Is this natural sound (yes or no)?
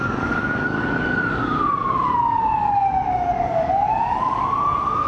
no